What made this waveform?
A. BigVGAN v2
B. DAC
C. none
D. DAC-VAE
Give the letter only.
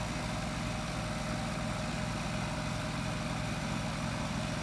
C